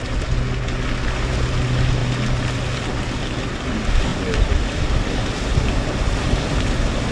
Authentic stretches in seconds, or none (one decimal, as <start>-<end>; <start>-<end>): 0.0-7.1